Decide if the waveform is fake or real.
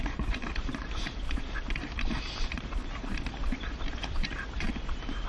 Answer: fake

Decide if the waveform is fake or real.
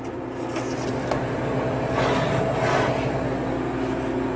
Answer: real